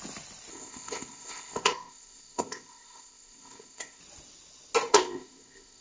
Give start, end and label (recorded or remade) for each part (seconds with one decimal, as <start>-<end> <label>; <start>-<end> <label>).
0.0-0.5 recorded; 0.5-4.0 remade; 4.0-4.9 recorded; 4.9-5.8 remade